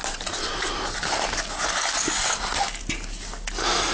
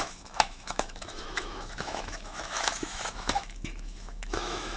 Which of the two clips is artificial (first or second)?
second